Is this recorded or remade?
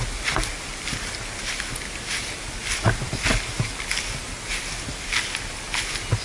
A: recorded